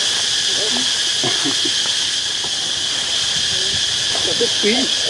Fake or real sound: real